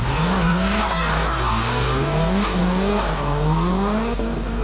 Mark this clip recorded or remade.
remade